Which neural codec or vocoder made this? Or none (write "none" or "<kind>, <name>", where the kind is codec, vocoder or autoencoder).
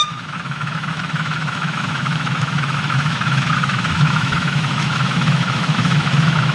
autoencoder, DAC-VAE